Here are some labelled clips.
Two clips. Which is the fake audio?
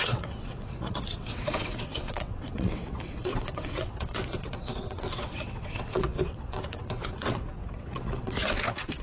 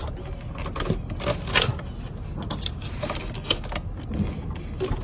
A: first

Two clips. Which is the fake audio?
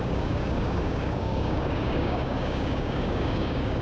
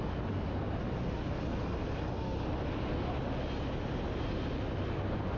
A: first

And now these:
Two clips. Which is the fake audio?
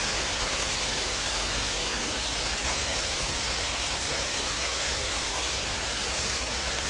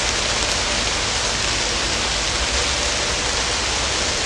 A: first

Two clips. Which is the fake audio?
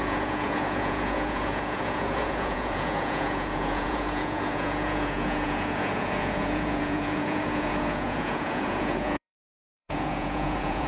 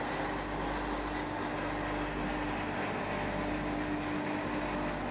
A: first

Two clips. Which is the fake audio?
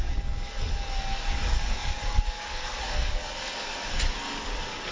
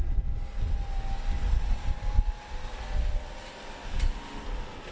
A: first